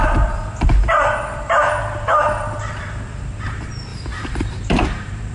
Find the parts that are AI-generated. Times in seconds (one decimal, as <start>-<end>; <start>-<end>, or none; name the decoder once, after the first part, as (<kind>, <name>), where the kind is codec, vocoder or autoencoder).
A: 2.8-3.9 (vocoder, BigVGAN v2); 4.5-5.3